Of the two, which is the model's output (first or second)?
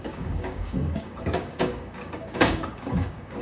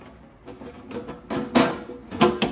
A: first